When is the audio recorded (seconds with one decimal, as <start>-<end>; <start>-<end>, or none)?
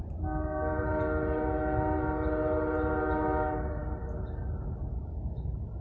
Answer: 0.0-5.8